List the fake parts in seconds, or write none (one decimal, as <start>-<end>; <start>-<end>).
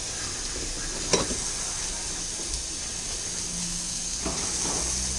3.6-4.2